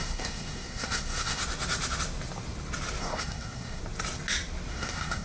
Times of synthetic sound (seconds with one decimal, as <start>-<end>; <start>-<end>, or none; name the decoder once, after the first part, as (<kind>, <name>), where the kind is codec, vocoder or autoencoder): 0.0-1.4 (codec, SNAC); 3.0-3.8; 4.7-5.2